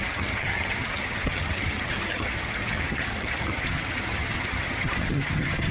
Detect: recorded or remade remade